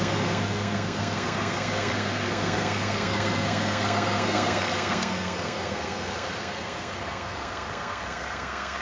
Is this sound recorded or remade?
remade